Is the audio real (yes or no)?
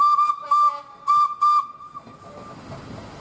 yes